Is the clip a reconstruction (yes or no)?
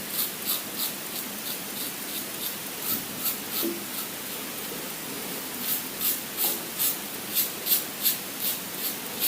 no